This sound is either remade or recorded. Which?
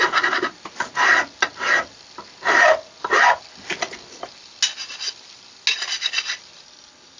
recorded